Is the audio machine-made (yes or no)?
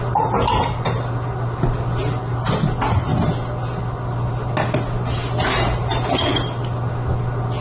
no